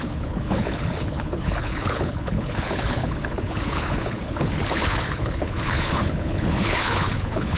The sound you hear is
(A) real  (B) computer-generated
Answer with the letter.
B